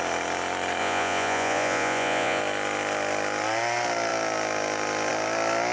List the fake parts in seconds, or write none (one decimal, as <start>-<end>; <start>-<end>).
0.8-2.4